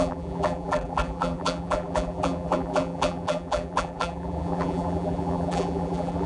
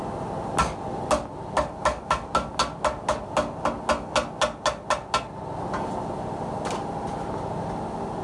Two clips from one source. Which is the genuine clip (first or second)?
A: second